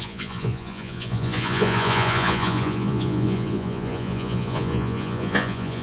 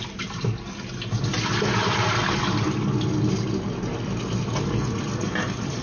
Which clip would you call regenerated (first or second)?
first